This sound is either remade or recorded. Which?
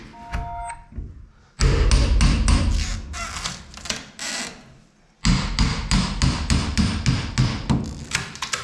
recorded